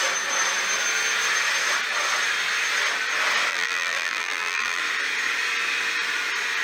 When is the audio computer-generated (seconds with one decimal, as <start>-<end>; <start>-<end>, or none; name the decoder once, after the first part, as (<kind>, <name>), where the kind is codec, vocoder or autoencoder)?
3.5-4.8 (vocoder, BigVGAN v2)